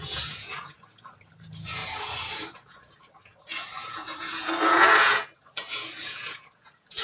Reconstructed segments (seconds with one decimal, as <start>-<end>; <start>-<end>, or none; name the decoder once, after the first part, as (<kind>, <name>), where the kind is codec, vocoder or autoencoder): 0.0-7.0 (vocoder, Vocos)